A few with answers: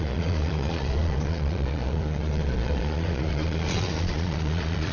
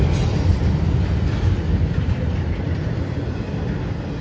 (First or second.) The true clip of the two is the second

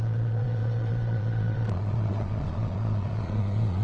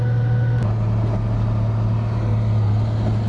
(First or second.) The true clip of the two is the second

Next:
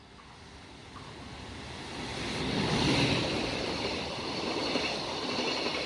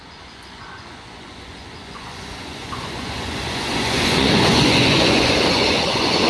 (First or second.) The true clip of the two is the first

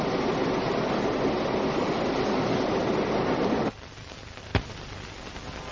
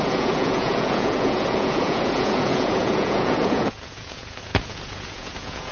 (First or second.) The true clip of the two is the first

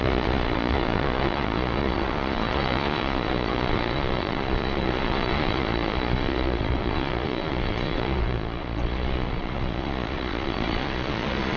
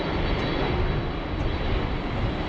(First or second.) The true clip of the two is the second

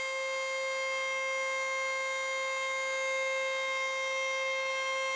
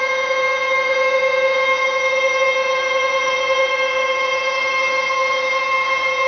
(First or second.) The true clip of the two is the first